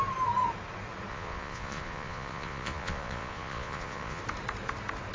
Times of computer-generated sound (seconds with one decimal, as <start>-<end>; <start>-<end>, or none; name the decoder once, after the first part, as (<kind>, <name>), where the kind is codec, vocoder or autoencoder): 1.1-4.2 (vocoder, Vocos)

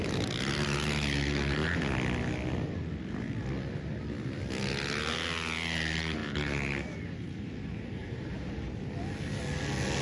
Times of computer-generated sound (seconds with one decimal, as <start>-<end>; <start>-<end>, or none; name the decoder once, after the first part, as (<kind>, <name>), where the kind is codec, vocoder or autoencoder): 6.2-8.9 (vocoder, BigVGAN v2)

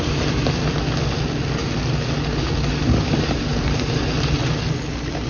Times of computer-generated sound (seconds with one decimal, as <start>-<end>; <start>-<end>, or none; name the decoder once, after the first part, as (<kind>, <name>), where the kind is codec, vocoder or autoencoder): none

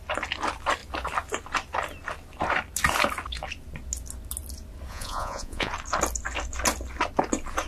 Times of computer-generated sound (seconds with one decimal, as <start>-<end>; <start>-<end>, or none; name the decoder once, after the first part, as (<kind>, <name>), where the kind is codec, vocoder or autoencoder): 4.9-5.7 (vocoder, Vocos)

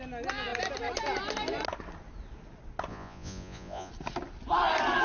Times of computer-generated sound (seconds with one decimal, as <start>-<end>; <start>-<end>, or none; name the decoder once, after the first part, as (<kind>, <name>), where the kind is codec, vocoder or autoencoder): 2.9-3.9 (vocoder, Vocos)

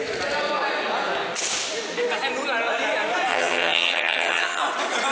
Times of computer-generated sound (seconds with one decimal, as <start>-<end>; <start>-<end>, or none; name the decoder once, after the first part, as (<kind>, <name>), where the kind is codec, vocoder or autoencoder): 3.3-4.6 (vocoder, HiFi-GAN)

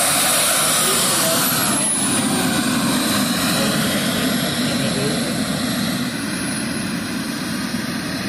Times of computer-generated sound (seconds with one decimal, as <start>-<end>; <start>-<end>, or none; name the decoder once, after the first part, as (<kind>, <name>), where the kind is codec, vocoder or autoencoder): none